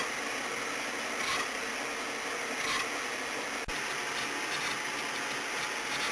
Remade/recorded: recorded